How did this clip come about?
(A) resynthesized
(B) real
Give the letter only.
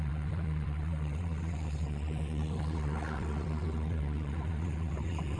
A